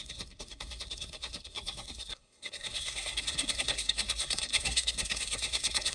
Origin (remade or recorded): remade